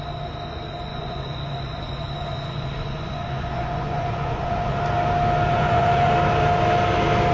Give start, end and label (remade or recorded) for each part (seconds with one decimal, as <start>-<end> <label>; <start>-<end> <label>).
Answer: 0.0-0.9 recorded; 0.9-4.8 remade; 4.8-5.5 recorded; 5.5-6.1 remade; 6.1-7.3 recorded

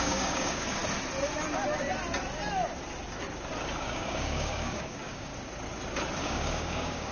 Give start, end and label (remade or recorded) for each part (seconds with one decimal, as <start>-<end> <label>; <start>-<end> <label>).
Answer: 0.0-0.8 remade; 0.8-3.8 recorded; 3.8-5.3 remade; 5.3-6.2 recorded; 6.2-7.1 remade

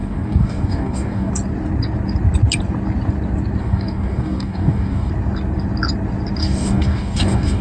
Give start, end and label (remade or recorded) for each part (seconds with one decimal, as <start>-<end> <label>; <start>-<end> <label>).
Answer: 0.0-1.3 remade; 1.3-3.6 recorded; 3.6-5.1 remade; 5.1-6.4 recorded; 6.4-7.6 remade

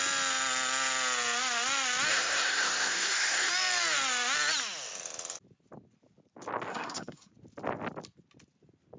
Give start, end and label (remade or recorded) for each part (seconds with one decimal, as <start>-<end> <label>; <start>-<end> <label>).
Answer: 0.0-2.1 recorded; 2.1-3.5 remade; 3.5-6.7 recorded; 6.7-7.3 remade; 7.3-9.0 recorded

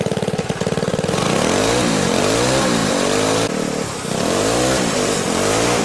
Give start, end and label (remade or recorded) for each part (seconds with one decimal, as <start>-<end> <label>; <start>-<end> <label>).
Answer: 0.0-5.8 recorded

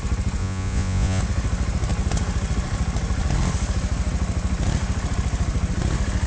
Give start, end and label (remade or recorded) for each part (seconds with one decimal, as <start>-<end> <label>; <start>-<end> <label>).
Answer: 0.0-0.4 recorded; 0.4-1.2 remade; 1.2-6.3 recorded